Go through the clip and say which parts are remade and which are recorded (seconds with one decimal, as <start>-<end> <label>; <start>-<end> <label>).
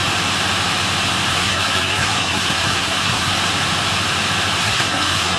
0.0-1.3 recorded; 1.3-3.3 remade; 3.3-4.6 recorded; 4.6-5.4 remade